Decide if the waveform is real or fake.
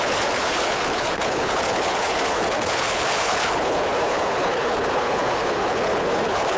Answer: fake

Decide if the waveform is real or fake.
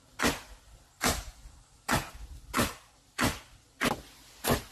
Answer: real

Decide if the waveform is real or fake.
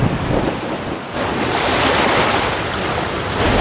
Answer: real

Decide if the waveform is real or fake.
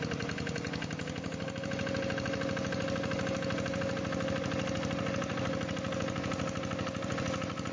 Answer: real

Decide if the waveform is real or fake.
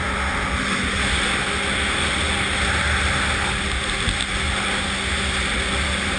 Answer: real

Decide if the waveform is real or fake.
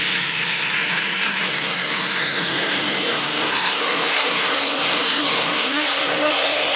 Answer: fake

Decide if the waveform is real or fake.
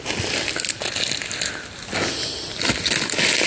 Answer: real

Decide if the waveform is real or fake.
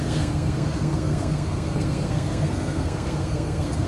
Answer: fake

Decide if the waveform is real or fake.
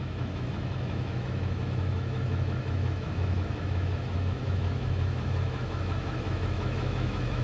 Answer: fake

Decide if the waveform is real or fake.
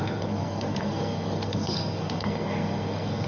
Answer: fake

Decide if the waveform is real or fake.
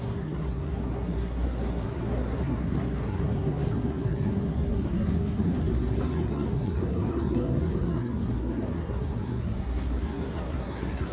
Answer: fake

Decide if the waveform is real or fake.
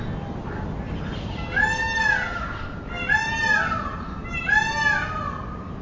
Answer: real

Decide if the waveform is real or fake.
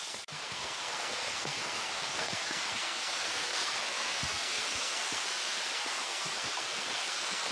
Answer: fake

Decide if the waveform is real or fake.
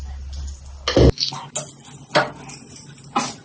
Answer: real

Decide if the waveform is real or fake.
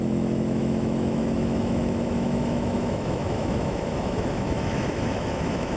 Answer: fake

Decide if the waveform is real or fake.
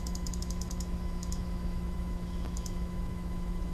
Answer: fake